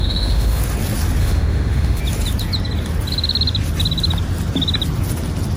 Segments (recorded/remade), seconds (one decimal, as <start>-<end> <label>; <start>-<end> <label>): 0.0-0.6 remade; 0.6-1.2 recorded; 1.2-2.0 remade; 2.0-5.6 recorded